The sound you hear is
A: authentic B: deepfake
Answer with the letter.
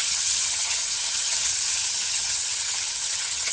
B